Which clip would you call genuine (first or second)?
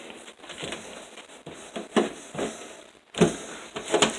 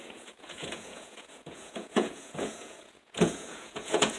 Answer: first